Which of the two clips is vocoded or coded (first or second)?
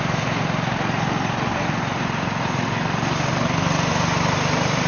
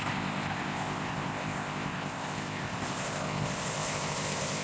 second